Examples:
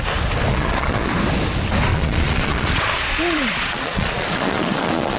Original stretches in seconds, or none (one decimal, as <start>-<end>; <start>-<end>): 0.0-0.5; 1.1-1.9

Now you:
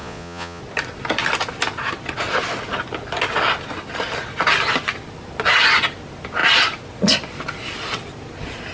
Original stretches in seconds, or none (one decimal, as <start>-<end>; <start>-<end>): 0.6-8.7

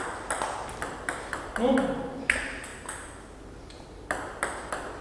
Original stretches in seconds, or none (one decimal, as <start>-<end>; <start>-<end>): 2.7-3.6